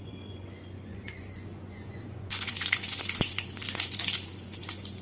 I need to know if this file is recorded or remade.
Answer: remade